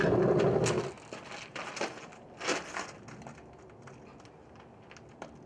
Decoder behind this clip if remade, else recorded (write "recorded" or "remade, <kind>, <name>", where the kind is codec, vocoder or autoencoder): recorded